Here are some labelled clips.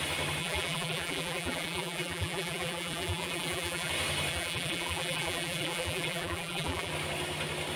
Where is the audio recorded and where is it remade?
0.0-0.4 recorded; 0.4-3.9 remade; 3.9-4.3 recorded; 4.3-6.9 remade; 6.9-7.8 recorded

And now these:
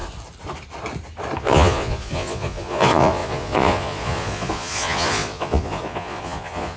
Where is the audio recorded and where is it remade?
0.0-1.4 recorded; 1.4-6.8 remade

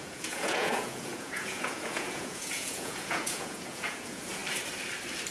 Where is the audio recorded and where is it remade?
0.0-4.4 remade; 4.4-5.3 recorded

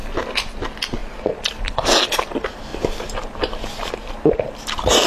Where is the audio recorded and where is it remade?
0.0-5.1 recorded

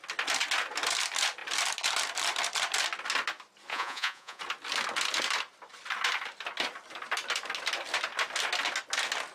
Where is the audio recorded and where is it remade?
0.0-3.7 recorded; 3.7-4.4 remade; 4.4-9.3 recorded

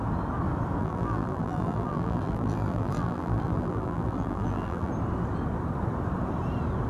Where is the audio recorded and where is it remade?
0.0-0.8 recorded; 0.8-4.9 remade; 4.9-6.9 recorded